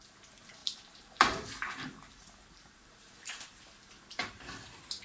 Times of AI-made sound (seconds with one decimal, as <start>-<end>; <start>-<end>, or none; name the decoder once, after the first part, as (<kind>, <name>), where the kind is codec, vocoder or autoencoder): 0.6-3.6 (vocoder, BigVGAN v2)